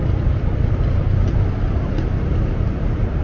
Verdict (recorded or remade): recorded